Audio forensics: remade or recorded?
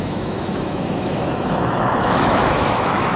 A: remade